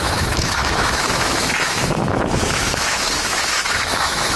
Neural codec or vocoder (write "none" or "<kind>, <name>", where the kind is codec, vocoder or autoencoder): autoencoder, DAC-VAE